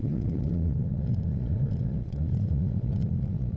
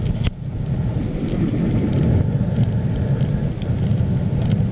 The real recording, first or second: second